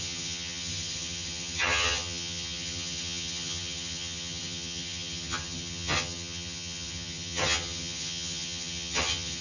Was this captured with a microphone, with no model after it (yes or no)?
no